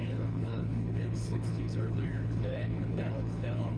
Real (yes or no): no